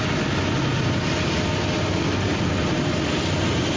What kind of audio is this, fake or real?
real